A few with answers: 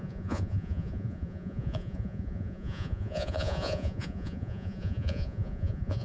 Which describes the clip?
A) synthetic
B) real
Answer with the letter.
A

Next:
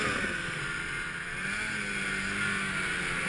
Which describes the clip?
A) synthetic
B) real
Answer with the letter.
B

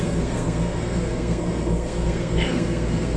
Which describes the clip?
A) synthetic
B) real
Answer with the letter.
A